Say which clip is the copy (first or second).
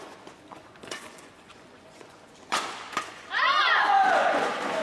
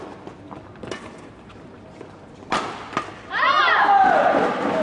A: first